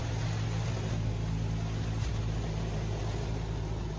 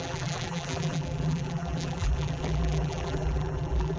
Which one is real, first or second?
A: first